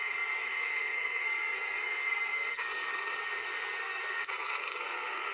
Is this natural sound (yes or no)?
no